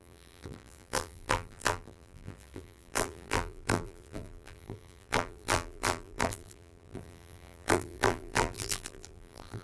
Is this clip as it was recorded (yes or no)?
no